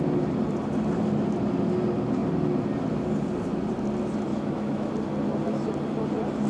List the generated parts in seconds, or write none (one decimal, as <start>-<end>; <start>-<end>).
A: 4.3-4.9